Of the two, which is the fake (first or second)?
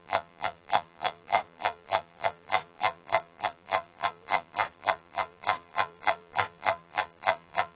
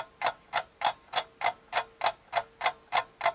first